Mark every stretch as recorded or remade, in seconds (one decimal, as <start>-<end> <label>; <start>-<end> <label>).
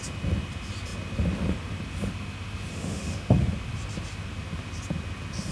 0.0-2.7 recorded; 2.7-3.5 remade; 3.5-5.5 recorded